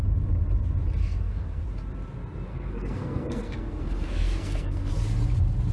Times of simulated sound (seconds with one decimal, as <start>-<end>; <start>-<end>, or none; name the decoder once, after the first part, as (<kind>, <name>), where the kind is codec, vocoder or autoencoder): 1.0-1.6 (codec, SNAC); 2.5-4.9